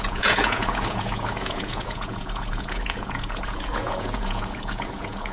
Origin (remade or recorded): remade